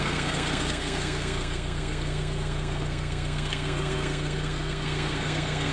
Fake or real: fake